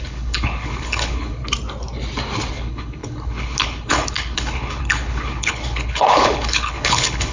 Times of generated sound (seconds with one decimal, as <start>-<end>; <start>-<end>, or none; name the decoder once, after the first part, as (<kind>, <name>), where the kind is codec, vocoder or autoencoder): 0.0-1.4 (codec, HILCodec); 2.5-7.3